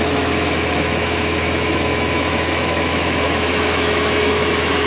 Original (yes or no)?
no